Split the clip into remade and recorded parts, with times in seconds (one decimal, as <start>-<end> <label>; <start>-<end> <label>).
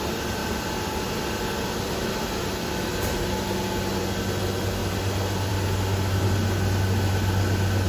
0.0-7.9 recorded